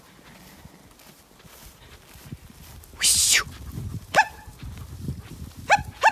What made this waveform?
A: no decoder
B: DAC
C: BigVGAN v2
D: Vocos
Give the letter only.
A